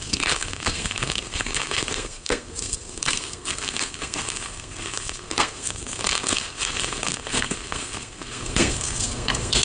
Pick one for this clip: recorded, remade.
remade